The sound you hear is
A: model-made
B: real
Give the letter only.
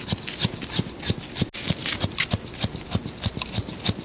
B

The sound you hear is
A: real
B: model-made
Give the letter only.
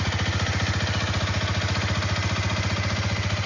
A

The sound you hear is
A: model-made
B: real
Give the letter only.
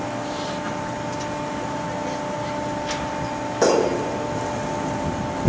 B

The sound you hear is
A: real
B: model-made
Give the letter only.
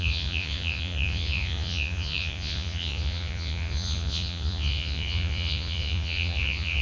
B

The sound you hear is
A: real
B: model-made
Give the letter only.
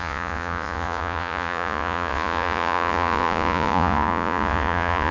B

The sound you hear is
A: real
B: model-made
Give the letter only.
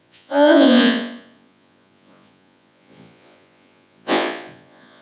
B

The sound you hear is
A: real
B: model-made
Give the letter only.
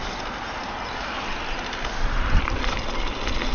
A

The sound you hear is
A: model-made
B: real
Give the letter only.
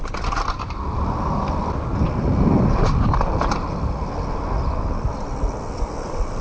B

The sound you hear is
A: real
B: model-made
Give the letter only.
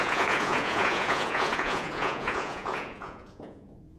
B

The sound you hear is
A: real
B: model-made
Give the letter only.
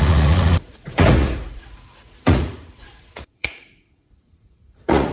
B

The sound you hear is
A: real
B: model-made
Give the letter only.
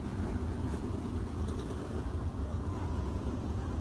B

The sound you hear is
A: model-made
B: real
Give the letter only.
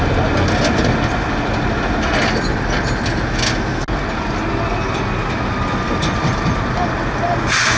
B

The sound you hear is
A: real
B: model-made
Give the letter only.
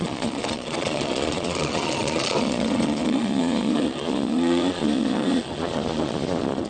B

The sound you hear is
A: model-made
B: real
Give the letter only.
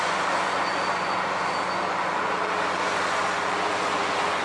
A